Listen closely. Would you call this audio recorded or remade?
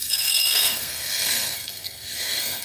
remade